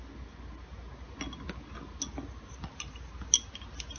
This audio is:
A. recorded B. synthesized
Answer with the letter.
A